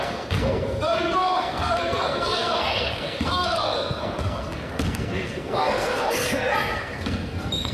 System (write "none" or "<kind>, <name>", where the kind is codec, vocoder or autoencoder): codec, SNAC